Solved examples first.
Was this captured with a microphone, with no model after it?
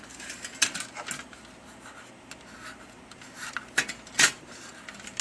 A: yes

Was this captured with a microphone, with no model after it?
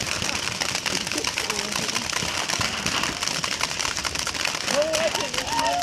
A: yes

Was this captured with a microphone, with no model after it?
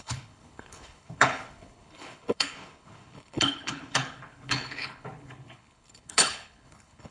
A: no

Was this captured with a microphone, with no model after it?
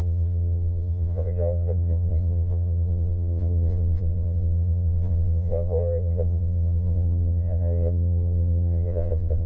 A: no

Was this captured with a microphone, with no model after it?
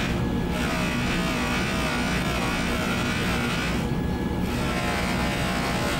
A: yes